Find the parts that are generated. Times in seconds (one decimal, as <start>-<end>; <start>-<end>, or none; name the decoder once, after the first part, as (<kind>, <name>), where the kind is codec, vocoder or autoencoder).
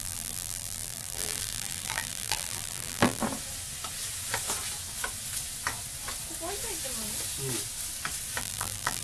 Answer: 0.0-3.2 (vocoder, BigVGAN v2); 8.4-9.0